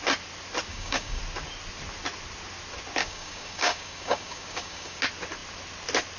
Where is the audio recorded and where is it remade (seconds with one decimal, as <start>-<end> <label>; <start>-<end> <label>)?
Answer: 0.0-0.7 recorded; 0.7-1.2 remade; 1.2-3.0 recorded; 3.0-5.0 remade; 5.0-6.2 recorded